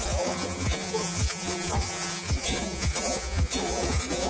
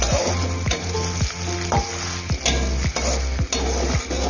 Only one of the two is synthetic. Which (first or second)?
first